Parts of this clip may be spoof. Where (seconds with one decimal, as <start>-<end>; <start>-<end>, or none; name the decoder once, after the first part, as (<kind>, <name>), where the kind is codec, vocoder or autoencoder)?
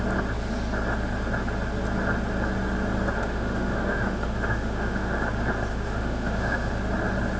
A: 3.2-5.1 (autoencoder, DAC-VAE); 5.7-6.7